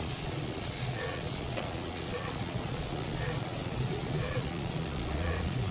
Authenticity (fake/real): fake